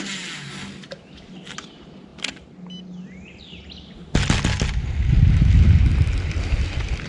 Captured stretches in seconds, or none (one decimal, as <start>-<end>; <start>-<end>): 0.0-7.1